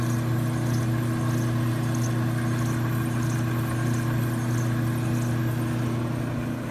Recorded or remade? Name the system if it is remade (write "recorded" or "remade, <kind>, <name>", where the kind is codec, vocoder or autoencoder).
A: recorded